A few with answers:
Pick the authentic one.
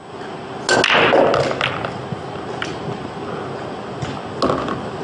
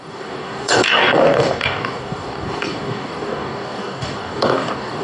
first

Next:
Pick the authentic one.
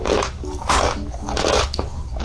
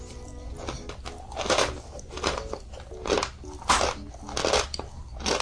second